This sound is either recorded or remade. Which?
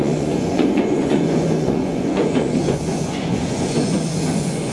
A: remade